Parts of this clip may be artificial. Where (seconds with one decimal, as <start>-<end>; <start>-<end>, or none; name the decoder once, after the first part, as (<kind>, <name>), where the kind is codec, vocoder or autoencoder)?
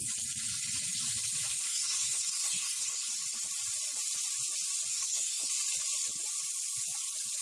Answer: 1.5-3.1 (codec, SNAC); 4.9-5.5